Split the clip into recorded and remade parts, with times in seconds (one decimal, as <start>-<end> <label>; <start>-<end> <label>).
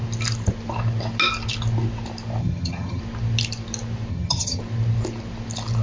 0.0-2.4 recorded; 2.4-3.0 remade; 3.0-4.1 recorded; 4.1-4.6 remade; 4.6-5.8 recorded